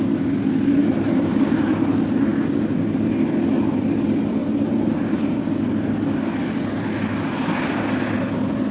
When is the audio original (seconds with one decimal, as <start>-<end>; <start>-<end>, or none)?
0.0-0.8; 1.9-4.4; 5.2-8.7